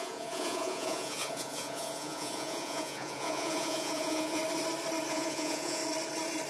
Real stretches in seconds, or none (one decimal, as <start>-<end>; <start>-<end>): 4.4-5.1; 5.8-6.5